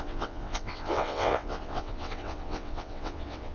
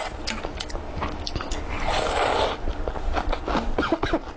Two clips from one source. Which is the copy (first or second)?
first